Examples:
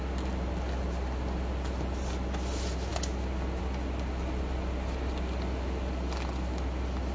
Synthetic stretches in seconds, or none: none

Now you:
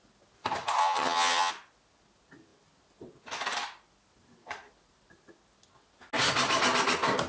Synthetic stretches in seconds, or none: 0.8-1.5 (vocoder, HiFi-GAN)